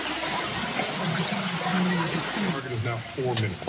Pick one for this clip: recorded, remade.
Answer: recorded